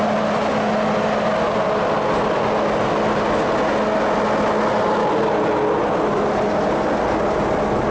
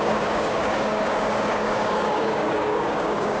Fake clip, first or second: second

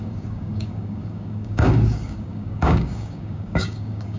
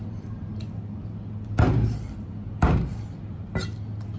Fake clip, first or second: first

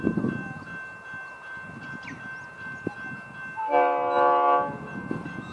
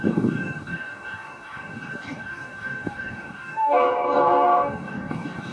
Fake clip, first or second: second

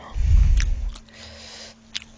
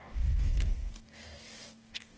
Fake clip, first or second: second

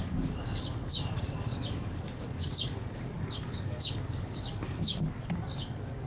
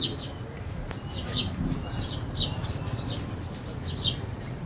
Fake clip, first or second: first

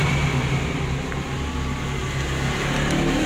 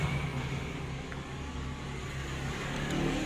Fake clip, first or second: second